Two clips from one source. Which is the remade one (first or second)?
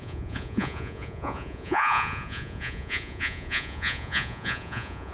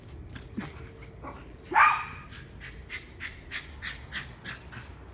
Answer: first